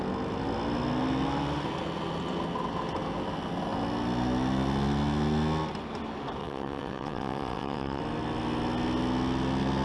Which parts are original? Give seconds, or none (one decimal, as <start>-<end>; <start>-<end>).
0.0-6.4; 8.0-9.8